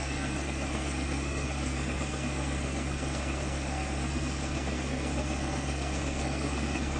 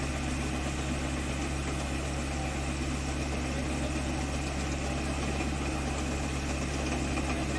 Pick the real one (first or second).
second